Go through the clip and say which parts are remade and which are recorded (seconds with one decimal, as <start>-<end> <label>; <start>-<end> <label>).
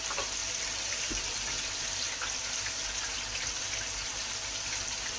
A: 0.0-5.2 recorded